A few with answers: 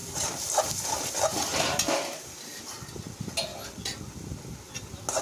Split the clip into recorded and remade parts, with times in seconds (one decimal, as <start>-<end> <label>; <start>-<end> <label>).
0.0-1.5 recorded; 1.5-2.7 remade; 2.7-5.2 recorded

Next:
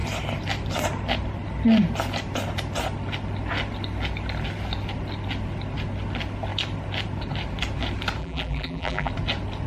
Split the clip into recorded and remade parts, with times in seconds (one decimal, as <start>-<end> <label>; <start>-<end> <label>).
0.0-8.2 recorded; 8.2-9.1 remade; 9.1-9.7 recorded

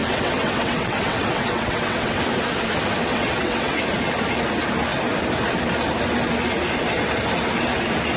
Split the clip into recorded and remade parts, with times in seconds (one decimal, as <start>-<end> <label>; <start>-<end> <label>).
0.0-2.2 remade; 2.2-3.1 recorded; 3.1-3.8 remade; 3.8-8.2 recorded